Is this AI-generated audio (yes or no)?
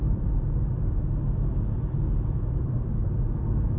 yes